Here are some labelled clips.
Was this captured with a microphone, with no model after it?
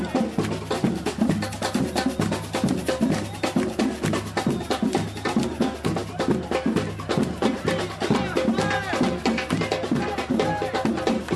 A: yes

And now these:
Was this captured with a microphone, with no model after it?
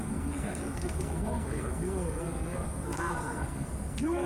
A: no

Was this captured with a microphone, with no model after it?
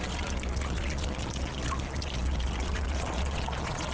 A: no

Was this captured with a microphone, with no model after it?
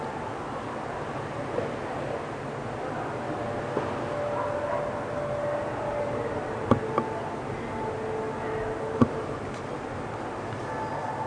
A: yes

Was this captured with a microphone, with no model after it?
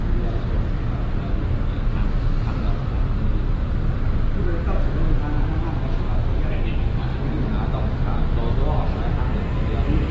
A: yes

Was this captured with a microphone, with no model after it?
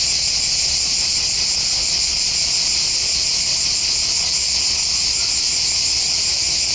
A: yes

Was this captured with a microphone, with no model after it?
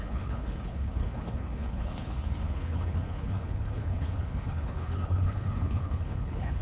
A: no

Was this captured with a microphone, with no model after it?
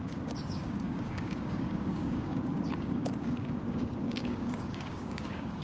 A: no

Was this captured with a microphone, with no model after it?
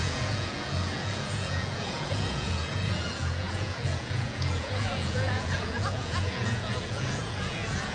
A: no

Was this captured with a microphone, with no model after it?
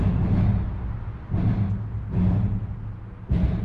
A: yes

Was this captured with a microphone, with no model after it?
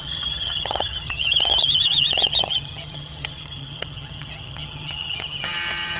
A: no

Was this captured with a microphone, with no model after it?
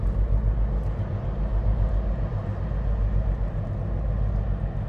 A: yes